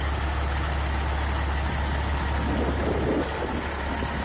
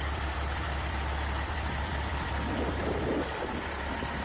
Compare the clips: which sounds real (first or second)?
first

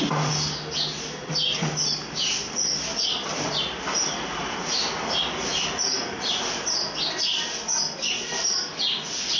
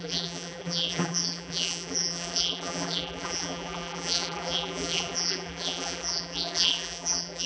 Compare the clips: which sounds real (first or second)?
first